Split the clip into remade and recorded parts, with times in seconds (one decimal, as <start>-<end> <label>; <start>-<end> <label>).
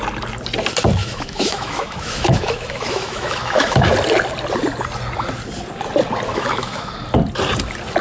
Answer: 0.0-1.0 recorded; 1.0-3.9 remade; 3.9-6.3 recorded; 6.3-6.9 remade; 6.9-8.0 recorded